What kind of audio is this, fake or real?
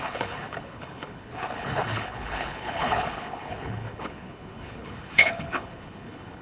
fake